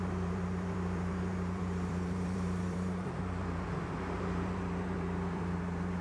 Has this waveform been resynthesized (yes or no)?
yes